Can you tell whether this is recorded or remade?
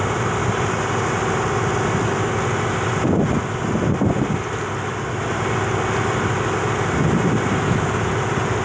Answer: recorded